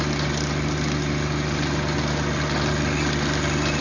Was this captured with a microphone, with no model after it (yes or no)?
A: yes